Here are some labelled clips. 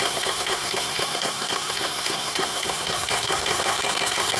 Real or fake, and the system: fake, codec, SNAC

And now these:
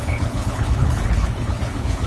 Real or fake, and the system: fake, codec, HILCodec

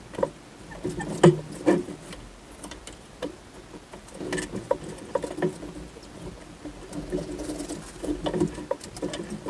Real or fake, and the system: real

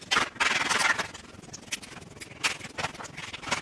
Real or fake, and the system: real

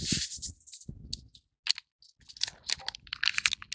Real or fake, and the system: real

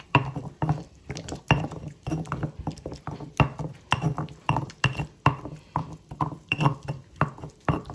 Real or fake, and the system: fake, vocoder, BigVGAN v2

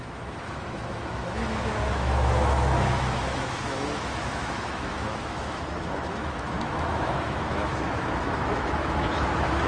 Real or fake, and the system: fake, autoencoder, DAC-VAE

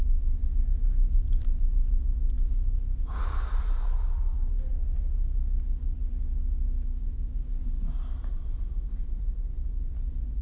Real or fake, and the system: real